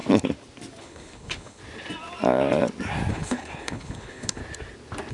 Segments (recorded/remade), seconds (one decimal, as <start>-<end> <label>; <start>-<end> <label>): 0.0-0.8 recorded; 0.8-1.6 remade; 1.6-3.1 recorded; 3.1-4.4 remade; 4.4-5.1 recorded